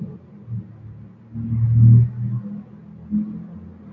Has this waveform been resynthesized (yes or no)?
no